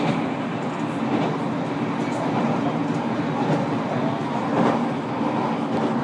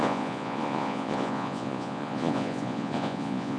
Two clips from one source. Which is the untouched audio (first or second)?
first